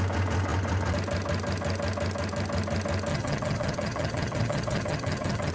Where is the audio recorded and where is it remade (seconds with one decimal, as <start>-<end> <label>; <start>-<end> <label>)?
0.0-3.1 recorded; 3.1-5.5 remade